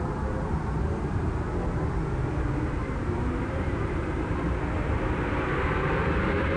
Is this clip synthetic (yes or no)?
yes